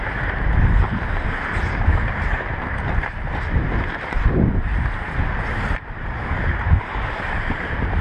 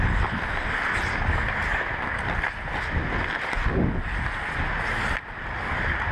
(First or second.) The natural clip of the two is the second